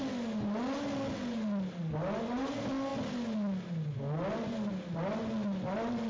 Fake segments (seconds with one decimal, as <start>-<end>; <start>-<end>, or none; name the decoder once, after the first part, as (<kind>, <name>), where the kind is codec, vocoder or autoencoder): none